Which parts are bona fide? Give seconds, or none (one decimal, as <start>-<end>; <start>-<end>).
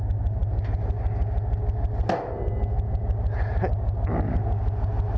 0.0-5.2